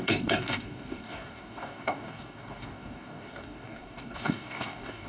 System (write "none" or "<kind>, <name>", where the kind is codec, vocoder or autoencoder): codec, DAC